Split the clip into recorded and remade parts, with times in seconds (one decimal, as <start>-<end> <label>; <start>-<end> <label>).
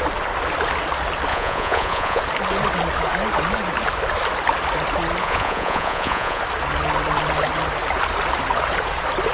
0.0-1.3 recorded; 1.3-2.2 remade; 2.2-5.2 recorded; 5.2-6.4 remade; 6.4-9.3 recorded